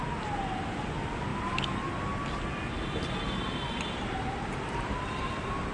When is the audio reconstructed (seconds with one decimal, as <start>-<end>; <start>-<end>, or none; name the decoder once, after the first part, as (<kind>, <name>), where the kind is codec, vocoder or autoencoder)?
none